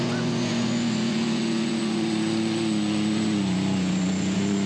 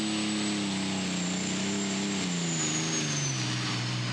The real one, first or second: second